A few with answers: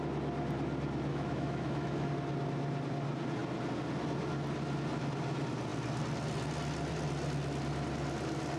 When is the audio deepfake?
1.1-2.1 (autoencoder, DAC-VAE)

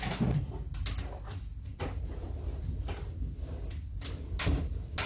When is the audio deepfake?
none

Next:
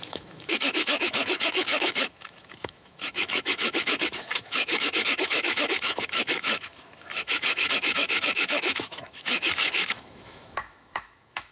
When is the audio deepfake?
0.0-11.5 (autoencoder, DAC-VAE)